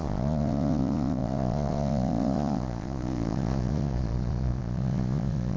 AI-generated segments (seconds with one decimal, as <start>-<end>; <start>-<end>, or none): 0.0-5.6